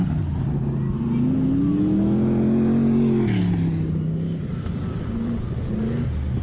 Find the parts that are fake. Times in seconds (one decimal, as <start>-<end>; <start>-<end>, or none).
none